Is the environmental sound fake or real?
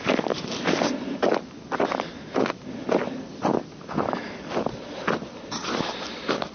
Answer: real